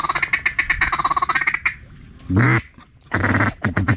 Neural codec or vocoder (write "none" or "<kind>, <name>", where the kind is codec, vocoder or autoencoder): none